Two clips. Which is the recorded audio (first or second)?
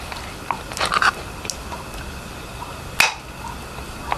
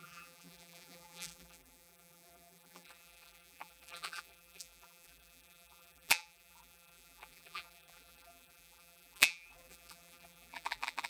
first